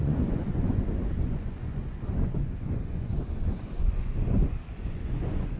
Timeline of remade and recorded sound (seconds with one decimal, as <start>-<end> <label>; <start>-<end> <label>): 0.0-5.6 remade